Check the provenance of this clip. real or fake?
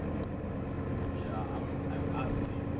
real